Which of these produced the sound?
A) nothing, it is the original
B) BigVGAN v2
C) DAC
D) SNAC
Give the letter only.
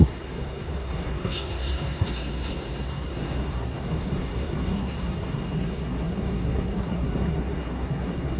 D